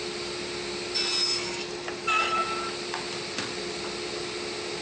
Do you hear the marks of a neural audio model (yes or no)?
no